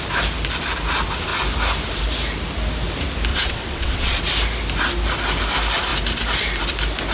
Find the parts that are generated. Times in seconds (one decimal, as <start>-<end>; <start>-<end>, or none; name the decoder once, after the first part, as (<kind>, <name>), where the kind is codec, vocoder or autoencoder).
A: 3.3-4.2 (vocoder, WaveNeXt)